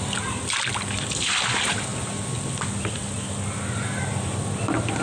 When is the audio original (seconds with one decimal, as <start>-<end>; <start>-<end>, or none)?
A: 0.0-5.0